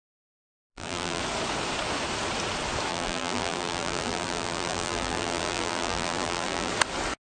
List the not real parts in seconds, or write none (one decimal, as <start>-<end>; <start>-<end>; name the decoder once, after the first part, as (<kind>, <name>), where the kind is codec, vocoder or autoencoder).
0.6-1.2 (vocoder, BigVGAN v2); 2.9-6.7

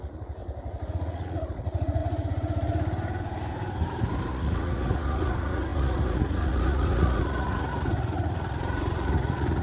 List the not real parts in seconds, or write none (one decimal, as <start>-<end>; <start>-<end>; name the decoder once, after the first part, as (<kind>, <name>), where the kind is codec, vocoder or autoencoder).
0.0-0.4 (vocoder, Vocos); 0.9-2.0; 4.3-9.6